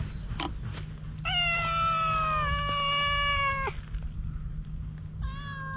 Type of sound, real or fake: real